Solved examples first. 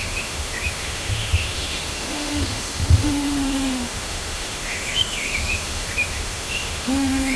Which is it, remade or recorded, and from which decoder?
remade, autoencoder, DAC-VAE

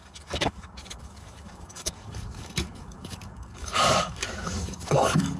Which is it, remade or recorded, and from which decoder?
remade, codec, DAC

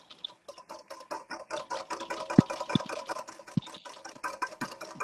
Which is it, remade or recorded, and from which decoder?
recorded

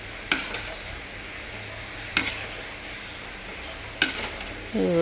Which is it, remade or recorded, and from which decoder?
recorded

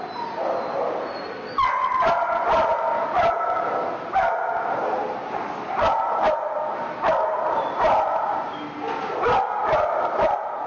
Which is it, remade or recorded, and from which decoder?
recorded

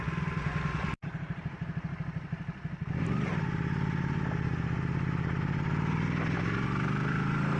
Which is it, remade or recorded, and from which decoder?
remade, vocoder, BigVGAN v2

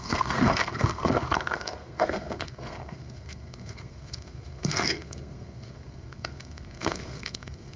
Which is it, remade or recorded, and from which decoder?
remade, codec, SNAC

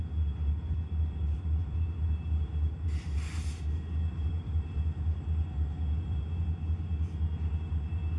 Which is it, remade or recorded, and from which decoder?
remade, vocoder, BigVGAN v2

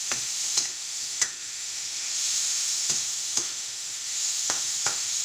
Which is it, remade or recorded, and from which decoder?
remade, autoencoder, DAC-VAE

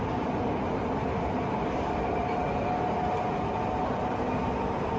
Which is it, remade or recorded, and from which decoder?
recorded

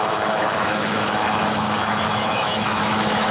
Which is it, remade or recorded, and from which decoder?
remade, autoencoder, DAC-VAE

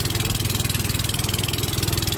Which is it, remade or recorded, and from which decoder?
recorded